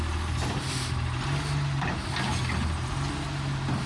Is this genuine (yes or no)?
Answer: yes